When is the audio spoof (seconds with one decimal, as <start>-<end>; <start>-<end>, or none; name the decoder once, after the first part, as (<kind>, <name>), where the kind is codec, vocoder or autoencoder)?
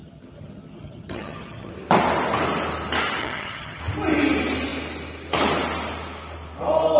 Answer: 0.0-1.7 (vocoder, HiFi-GAN); 3.2-3.8